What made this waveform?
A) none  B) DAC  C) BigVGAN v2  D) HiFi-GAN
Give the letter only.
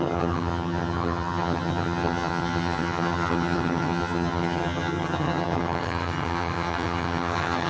D